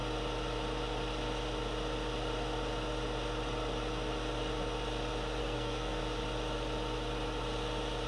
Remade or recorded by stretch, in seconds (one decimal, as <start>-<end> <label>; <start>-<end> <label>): 0.0-5.4 recorded; 5.4-6.0 remade; 6.0-8.1 recorded